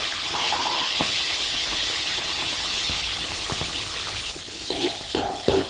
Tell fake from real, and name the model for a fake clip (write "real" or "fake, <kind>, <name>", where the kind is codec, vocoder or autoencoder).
fake, codec, HILCodec